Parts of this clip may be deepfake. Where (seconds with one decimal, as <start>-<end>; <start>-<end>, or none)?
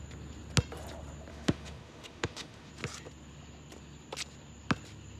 1.3-2.7